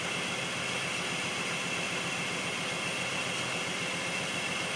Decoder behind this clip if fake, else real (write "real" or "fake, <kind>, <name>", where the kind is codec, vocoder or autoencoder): real